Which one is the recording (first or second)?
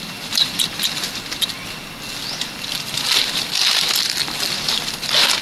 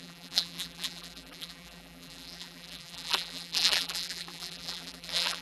first